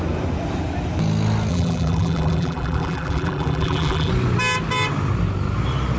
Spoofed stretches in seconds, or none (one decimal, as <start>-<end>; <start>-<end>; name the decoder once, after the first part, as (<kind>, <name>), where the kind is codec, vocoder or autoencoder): 1.5-4.1 (vocoder, BigVGAN v2)